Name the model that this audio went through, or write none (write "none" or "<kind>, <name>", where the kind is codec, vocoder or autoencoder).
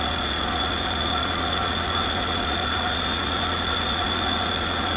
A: vocoder, Vocos